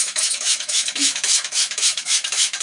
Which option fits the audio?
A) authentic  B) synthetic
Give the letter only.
B